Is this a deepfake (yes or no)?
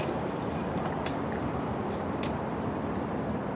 yes